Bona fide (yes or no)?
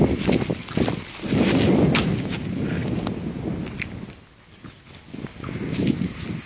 yes